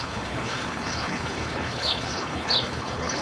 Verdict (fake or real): fake